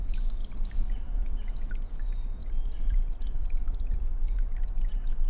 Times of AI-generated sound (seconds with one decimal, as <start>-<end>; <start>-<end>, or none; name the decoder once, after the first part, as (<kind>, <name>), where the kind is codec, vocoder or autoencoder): 0.4-1.7 (vocoder, BigVGAN v2); 2.4-5.3